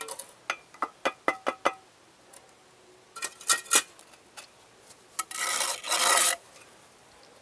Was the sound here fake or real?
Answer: real